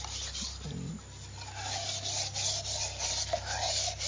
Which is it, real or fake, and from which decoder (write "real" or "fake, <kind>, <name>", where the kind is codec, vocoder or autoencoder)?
real